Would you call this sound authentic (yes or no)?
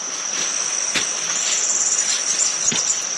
yes